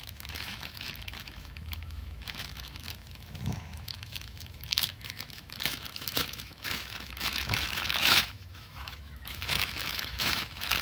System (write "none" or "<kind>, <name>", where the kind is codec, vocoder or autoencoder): autoencoder, DAC-VAE